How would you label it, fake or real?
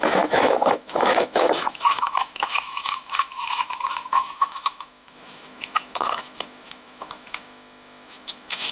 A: fake